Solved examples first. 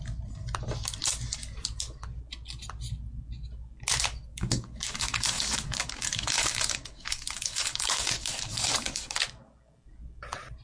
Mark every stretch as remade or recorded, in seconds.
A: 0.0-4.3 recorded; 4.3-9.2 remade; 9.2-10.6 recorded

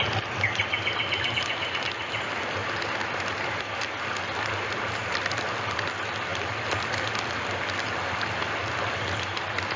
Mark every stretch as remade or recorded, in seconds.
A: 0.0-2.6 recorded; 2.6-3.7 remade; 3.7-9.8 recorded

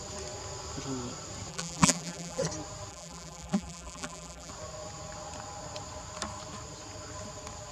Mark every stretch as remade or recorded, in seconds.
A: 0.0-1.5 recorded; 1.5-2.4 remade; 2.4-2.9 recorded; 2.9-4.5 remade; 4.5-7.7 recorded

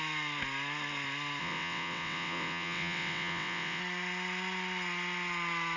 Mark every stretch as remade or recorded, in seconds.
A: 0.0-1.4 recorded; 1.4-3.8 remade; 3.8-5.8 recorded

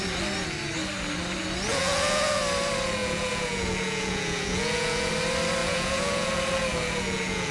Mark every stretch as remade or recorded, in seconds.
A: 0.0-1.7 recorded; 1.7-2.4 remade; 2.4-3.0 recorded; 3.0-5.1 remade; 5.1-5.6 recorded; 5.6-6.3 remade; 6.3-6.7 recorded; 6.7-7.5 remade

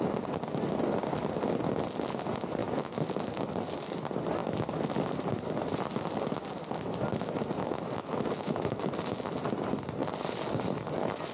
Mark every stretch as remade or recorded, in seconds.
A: 0.0-2.6 recorded; 2.6-3.1 remade; 3.1-7.6 recorded; 7.6-8.8 remade; 8.8-11.3 recorded